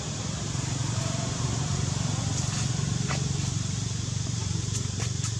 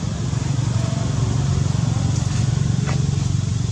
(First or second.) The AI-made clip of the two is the first